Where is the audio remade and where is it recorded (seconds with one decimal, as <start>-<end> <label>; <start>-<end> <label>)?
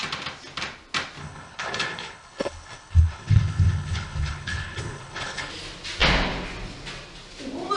0.0-1.2 recorded; 1.2-5.5 remade; 5.5-7.8 recorded